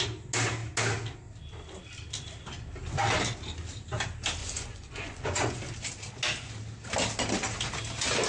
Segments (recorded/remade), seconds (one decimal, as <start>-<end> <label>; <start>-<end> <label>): 0.0-4.4 recorded; 4.4-5.6 remade; 5.6-8.3 recorded